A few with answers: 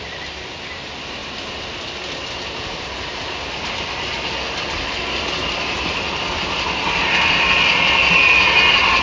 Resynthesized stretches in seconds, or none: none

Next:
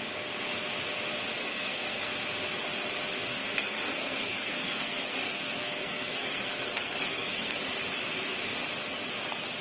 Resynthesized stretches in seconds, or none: 1.4-2.1 (codec, SNAC); 3.3-7.6

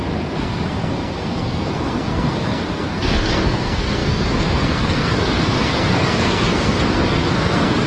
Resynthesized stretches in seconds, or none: 0.0-7.9 (codec, SNAC)